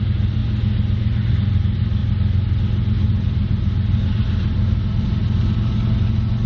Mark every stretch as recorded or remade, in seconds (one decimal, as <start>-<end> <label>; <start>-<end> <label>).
0.0-0.4 remade; 0.4-1.3 recorded; 1.3-2.0 remade; 2.0-3.1 recorded; 3.1-5.2 remade; 5.2-6.5 recorded

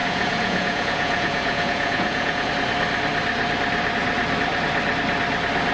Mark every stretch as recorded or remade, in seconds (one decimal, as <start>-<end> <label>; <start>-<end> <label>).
0.0-2.5 remade; 2.5-5.7 recorded

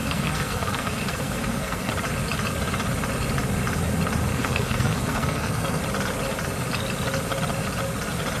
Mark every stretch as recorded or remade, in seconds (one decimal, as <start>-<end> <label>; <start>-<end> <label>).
0.0-1.9 remade; 1.9-4.3 recorded; 4.3-5.8 remade; 5.8-8.4 recorded

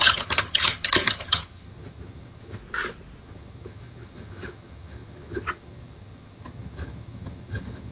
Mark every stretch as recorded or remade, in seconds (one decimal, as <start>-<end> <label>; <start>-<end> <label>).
0.0-2.6 remade; 2.6-3.2 recorded; 3.2-7.9 remade

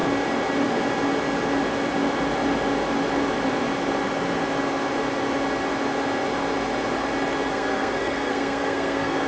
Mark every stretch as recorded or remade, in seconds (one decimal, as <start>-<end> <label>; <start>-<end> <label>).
0.0-7.5 recorded; 7.5-9.3 remade

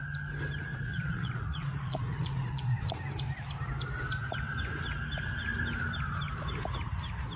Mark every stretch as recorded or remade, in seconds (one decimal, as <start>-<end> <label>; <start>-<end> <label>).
0.0-0.7 recorded; 0.7-3.0 remade; 3.0-7.4 recorded